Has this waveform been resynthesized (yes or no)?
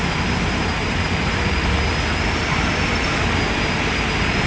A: yes